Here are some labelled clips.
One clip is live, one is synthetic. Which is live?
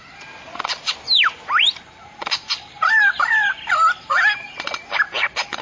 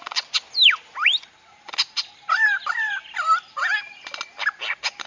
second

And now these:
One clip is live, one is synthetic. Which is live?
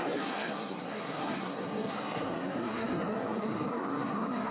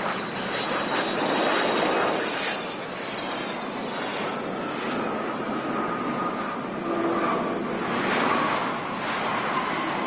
second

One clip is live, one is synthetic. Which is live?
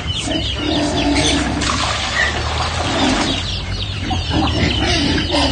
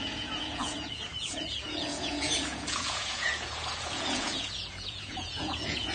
first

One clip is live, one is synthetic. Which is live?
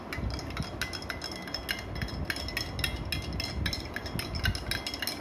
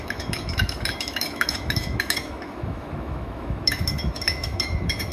first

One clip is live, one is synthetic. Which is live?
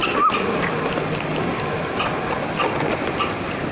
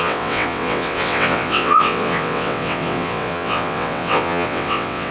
first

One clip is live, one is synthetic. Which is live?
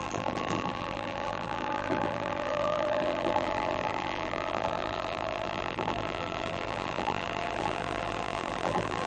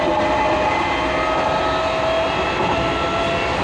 second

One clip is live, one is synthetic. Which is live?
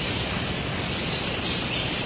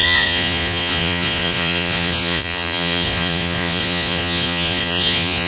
first